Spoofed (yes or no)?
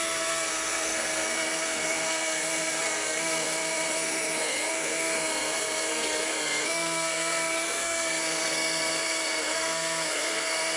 yes